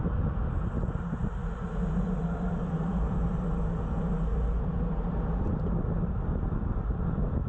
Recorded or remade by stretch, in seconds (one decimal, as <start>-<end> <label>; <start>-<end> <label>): 0.0-7.5 recorded

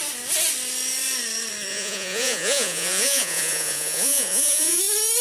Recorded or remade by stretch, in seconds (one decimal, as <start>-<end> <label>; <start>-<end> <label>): 0.0-1.7 recorded; 1.7-4.8 remade; 4.8-5.2 recorded

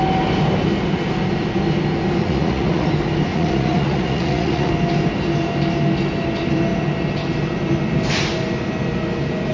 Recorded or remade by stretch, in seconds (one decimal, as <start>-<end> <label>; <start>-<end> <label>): 0.0-2.2 recorded; 2.2-2.9 remade; 2.9-3.3 recorded; 3.3-4.7 remade; 4.7-9.5 recorded

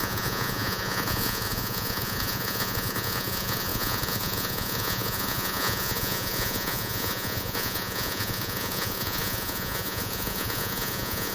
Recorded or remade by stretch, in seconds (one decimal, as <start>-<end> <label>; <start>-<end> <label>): 0.0-11.3 remade

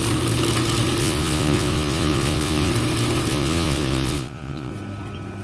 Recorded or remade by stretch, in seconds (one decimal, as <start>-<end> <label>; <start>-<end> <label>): 0.0-1.0 recorded; 1.0-2.7 remade; 2.7-3.3 recorded; 3.3-4.7 remade; 4.7-5.4 recorded

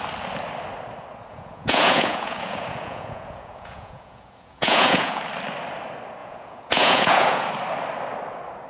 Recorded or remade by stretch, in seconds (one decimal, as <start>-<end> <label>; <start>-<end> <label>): 0.0-1.3 recorded; 1.3-5.2 remade; 5.2-6.2 recorded; 6.2-7.5 remade; 7.5-8.7 recorded